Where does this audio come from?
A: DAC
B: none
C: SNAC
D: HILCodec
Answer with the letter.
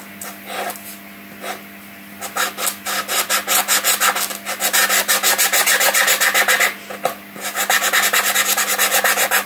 B